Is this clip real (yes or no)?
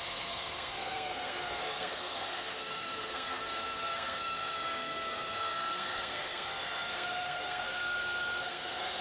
no